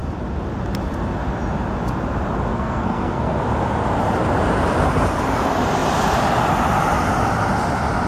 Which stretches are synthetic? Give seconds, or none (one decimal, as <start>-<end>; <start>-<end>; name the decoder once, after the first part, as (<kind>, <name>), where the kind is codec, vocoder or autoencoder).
2.5-3.4 (codec, SNAC)